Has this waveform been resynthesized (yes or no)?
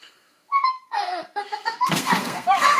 yes